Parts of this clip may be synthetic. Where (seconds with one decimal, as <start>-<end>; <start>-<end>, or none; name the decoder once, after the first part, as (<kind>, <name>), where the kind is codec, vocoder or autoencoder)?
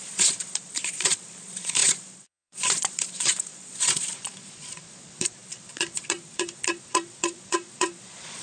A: 0.0-8.4 (vocoder, Vocos)